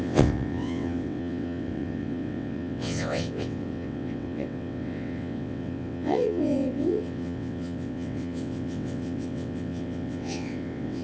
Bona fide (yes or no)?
no